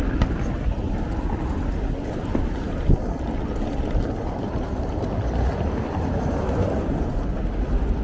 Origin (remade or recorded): recorded